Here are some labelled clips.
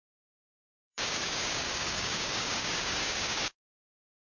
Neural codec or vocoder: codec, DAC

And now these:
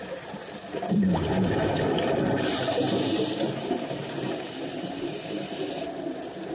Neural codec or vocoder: none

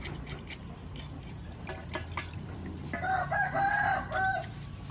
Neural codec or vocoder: none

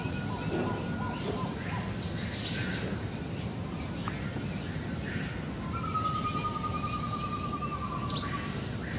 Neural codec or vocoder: none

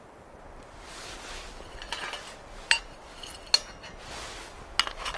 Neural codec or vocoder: none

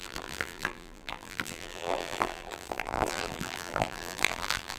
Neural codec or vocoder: vocoder, BigVGAN v2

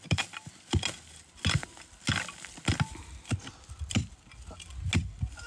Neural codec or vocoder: none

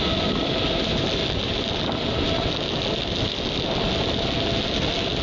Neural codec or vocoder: none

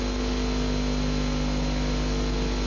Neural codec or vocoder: none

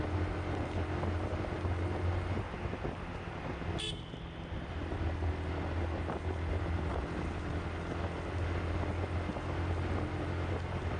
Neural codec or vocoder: none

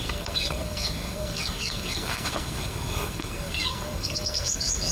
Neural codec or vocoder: codec, SNAC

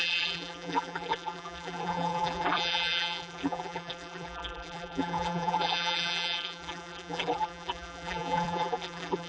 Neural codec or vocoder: vocoder, BigVGAN v2